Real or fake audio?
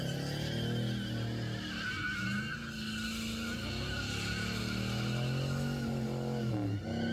real